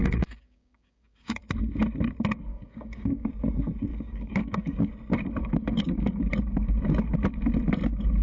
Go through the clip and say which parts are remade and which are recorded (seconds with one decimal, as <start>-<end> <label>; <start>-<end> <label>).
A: 0.0-1.4 remade; 1.4-2.5 recorded; 2.5-3.3 remade; 3.3-3.9 recorded; 3.9-4.9 remade; 4.9-5.4 recorded; 5.4-6.3 remade; 6.3-8.2 recorded